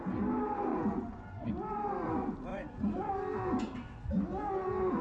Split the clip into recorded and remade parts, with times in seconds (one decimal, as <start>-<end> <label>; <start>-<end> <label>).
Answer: 0.0-0.7 recorded; 0.7-1.5 remade; 1.5-2.5 recorded; 2.5-3.1 remade; 3.1-5.0 recorded